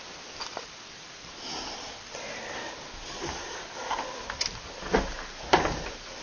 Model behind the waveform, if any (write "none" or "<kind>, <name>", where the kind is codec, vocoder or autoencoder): none